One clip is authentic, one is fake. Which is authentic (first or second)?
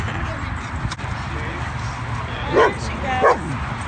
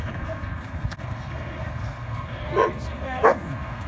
first